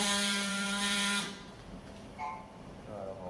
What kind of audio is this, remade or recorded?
remade